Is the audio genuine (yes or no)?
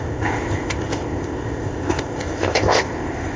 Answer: no